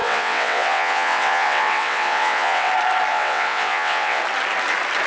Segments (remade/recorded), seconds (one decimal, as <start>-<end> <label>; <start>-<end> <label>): 0.0-2.7 remade; 2.7-3.1 recorded; 3.1-4.2 remade; 4.2-5.1 recorded

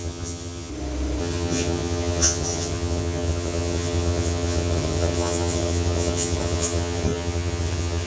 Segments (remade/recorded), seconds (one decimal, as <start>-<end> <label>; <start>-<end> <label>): 0.0-0.7 remade; 0.7-1.2 recorded; 1.2-8.1 remade

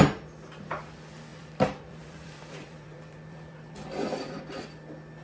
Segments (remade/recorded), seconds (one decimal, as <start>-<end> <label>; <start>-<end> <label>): 0.0-1.3 recorded; 1.3-4.4 remade; 4.4-5.2 recorded

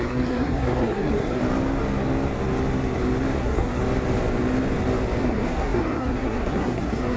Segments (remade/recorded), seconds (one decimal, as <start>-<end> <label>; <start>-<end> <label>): 0.0-1.4 remade; 1.4-3.4 recorded; 3.4-3.8 remade; 3.8-5.2 recorded; 5.2-7.2 remade

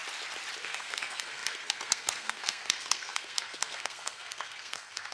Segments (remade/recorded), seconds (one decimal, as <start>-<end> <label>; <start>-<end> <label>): 0.0-0.6 recorded; 0.6-5.1 remade

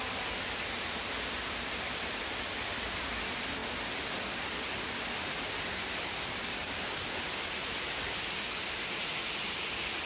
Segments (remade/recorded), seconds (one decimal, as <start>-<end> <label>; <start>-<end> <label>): 0.0-10.1 recorded

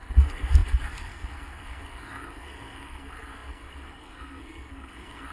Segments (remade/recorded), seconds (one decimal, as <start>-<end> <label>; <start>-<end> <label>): 0.0-5.3 remade